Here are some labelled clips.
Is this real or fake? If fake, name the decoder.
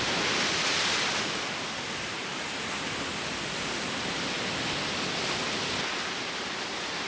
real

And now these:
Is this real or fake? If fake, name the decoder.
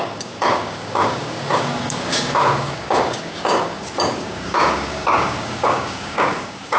fake, codec, DAC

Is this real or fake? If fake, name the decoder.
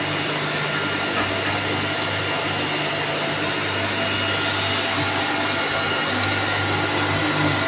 real